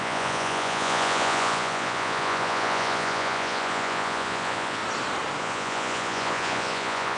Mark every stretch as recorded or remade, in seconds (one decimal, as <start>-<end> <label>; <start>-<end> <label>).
0.0-4.8 remade; 4.8-5.4 recorded; 5.4-7.2 remade